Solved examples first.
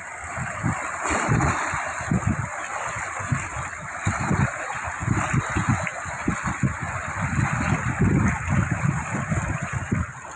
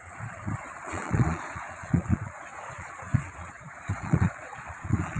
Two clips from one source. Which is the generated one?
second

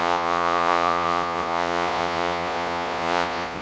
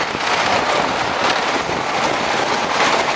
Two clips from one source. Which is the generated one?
first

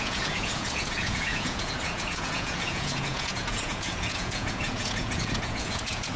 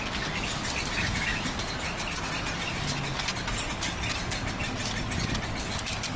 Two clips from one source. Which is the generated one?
first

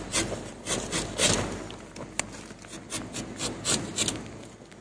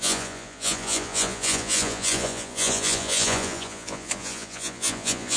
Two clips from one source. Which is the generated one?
second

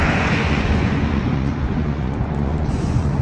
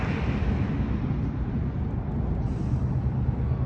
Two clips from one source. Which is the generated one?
first